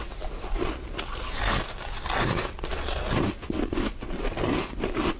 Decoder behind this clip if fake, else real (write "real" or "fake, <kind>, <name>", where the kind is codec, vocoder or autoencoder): real